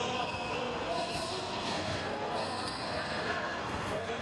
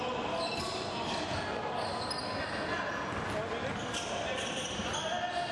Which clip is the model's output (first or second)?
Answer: first